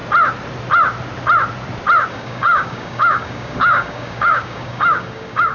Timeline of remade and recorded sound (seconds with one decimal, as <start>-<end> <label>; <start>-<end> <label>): 0.0-2.1 recorded; 2.1-5.5 remade